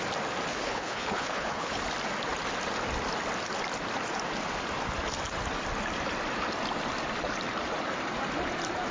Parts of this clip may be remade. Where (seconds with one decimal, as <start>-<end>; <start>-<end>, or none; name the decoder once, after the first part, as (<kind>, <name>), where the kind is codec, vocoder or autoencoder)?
0.5-1.8 (codec, HILCodec)